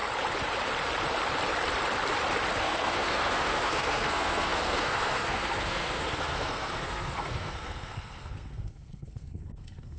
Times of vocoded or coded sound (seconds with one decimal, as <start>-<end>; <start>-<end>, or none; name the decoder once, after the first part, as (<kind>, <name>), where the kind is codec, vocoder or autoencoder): 2.6-10.0 (codec, SNAC)